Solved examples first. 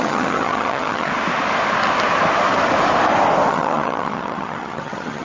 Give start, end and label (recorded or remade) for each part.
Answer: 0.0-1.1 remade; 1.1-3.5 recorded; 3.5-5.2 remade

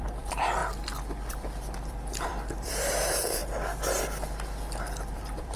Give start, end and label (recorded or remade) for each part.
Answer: 0.0-0.6 remade; 0.6-1.3 recorded; 1.3-3.4 remade; 3.4-4.8 recorded; 4.8-5.6 remade

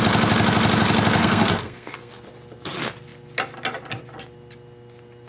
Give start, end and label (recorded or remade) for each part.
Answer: 0.0-1.2 recorded; 1.2-2.1 remade; 2.1-5.3 recorded

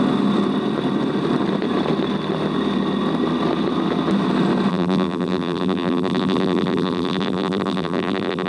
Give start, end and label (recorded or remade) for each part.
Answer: 0.0-4.7 recorded; 4.7-8.5 remade

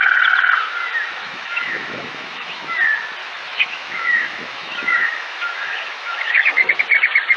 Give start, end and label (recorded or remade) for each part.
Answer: 0.0-1.2 recorded; 1.2-2.7 remade; 2.7-3.2 recorded; 3.2-6.7 remade; 6.7-7.4 recorded